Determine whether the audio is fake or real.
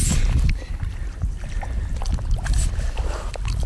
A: real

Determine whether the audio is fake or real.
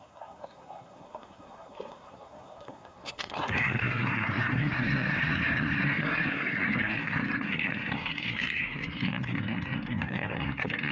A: fake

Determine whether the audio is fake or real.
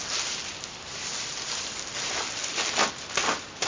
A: real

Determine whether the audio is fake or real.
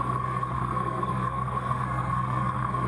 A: fake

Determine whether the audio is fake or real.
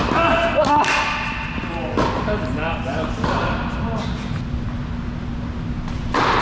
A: real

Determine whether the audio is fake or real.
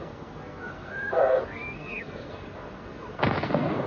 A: fake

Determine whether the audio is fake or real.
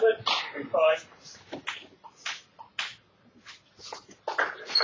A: real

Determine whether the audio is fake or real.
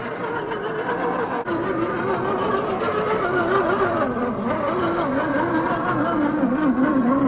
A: real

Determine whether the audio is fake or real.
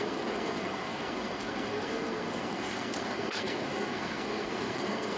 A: fake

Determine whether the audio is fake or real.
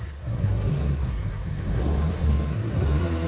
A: fake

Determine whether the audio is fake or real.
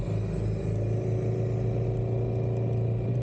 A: real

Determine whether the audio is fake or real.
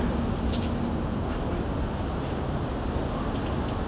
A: real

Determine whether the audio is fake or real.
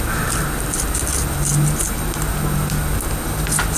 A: real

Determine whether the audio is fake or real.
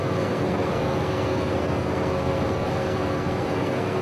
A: fake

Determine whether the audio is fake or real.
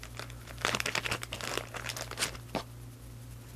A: real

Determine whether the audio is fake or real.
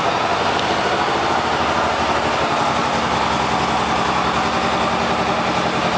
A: real